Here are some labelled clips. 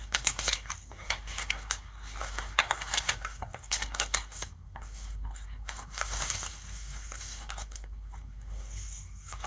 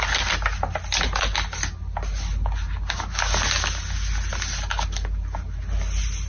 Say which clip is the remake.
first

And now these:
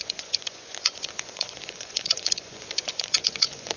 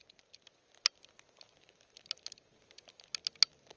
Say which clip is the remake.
first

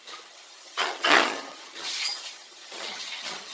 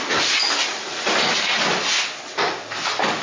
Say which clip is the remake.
first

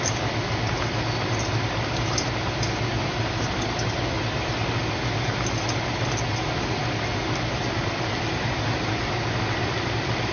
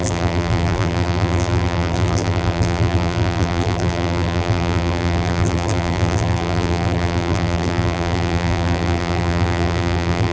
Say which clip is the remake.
second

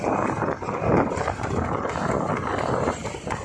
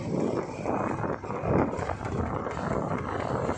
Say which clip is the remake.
first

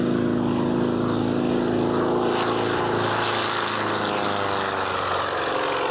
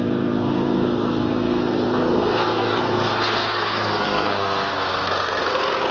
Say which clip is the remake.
second